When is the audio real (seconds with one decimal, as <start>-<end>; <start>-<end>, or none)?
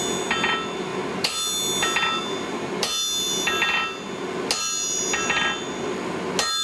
0.0-6.6